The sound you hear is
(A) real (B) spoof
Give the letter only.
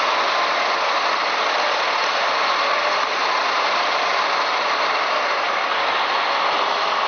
A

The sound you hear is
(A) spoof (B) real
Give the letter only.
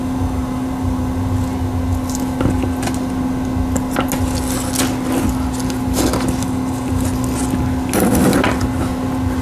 B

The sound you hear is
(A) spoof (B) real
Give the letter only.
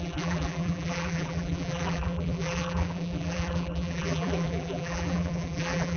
A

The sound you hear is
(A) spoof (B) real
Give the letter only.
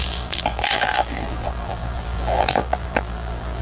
A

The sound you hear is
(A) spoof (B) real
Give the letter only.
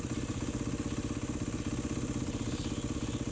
B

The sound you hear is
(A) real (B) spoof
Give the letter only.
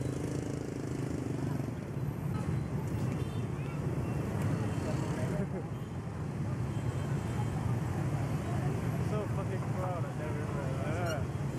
A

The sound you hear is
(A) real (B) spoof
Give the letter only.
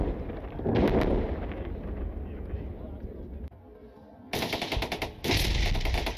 A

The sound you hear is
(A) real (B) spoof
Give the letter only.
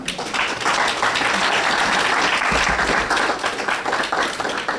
A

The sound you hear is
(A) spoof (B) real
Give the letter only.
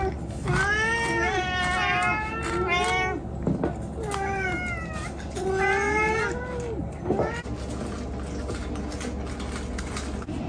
B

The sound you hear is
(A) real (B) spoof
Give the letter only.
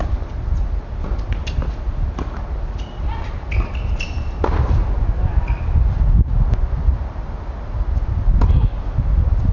A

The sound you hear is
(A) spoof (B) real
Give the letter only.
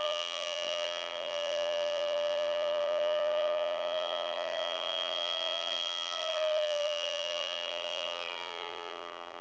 A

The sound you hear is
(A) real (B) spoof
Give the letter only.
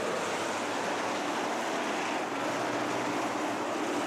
A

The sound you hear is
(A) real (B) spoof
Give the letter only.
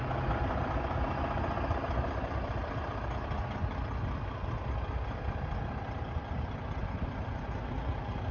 A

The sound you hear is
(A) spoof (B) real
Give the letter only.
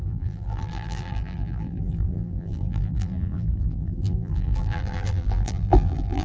A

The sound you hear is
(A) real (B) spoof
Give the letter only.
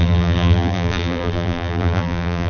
B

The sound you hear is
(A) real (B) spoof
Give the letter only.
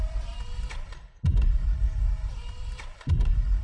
B